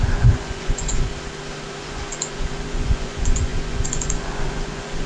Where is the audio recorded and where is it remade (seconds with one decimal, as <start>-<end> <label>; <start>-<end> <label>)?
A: 0.0-1.1 remade; 1.1-1.8 recorded; 1.8-5.1 remade